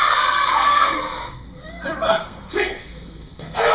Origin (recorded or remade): remade